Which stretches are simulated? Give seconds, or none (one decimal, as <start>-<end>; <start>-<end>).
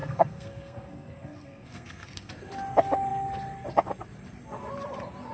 0.0-2.3